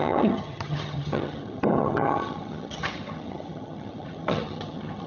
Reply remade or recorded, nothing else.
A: remade